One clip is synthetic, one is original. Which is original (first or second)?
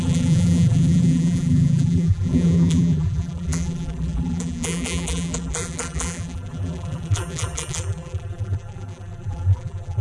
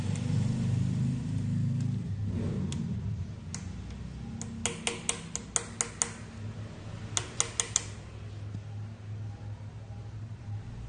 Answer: second